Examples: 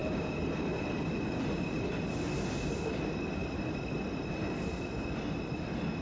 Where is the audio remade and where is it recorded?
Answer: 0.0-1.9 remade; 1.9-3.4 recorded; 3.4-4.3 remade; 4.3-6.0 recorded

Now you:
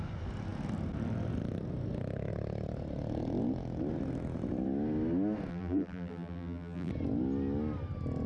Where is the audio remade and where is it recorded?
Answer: 0.0-5.5 recorded; 5.5-6.9 remade; 6.9-8.3 recorded

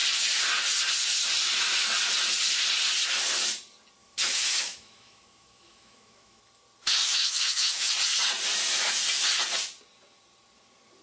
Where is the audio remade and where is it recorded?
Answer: 0.0-4.0 recorded; 4.0-6.4 remade; 6.4-7.0 recorded; 7.0-7.9 remade; 7.9-11.0 recorded

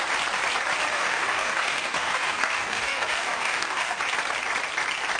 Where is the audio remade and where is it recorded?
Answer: 0.0-0.9 recorded; 0.9-4.0 remade; 4.0-5.2 recorded